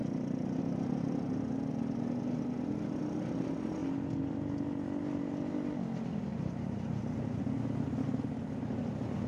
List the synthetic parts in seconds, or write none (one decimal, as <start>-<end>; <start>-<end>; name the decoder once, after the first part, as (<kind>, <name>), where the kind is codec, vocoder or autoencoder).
6.3-7.4 (vocoder, BigVGAN v2)